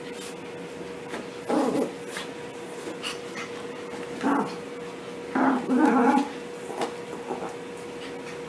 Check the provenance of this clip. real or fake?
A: real